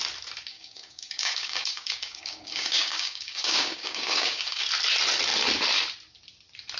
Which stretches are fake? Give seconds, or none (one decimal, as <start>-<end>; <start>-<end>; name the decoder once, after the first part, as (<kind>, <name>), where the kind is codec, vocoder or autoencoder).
0.5-4.6 (codec, DAC)

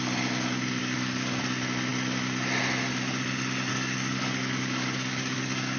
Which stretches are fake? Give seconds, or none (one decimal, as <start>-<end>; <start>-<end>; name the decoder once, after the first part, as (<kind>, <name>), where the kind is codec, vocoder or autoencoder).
0.8-1.4 (codec, DAC); 3.7-5.8

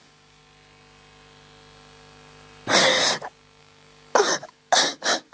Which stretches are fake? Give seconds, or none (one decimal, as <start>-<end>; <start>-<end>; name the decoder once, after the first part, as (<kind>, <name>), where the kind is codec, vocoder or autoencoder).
0.0-0.4 (codec, DAC); 3.6-5.3